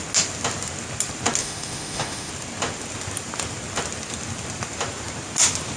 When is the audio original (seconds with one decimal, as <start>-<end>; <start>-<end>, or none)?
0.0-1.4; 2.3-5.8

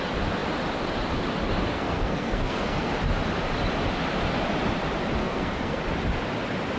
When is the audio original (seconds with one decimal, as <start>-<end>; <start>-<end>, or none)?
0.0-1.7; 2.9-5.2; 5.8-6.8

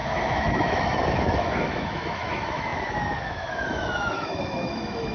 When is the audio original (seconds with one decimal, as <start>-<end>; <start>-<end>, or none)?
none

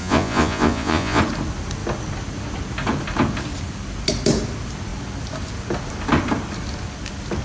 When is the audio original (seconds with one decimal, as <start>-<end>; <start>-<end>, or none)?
1.2-7.4